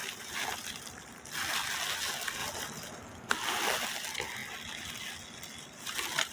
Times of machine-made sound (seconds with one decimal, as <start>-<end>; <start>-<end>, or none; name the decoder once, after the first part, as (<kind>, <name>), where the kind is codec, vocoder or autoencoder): none